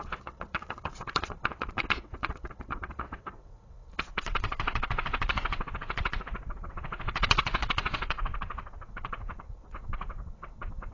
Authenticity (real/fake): fake